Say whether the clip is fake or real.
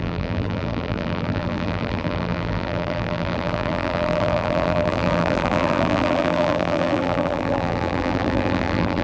fake